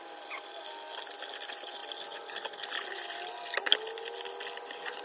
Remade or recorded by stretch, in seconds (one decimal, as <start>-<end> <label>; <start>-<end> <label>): 0.0-5.0 recorded